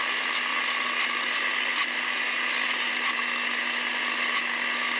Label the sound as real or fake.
real